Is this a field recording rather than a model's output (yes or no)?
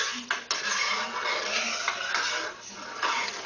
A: yes